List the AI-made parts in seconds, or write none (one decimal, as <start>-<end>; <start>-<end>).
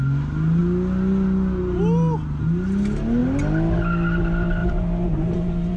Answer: 4.6-5.8